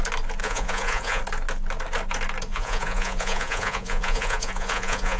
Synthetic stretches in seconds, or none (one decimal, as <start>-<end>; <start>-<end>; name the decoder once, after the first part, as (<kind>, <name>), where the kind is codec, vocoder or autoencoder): 0.4-1.2 (vocoder, Vocos); 2.5-5.2